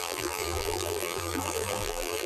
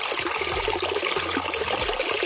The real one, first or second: second